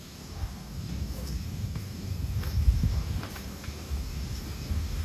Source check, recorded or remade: remade